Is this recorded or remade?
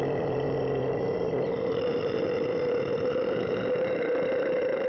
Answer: remade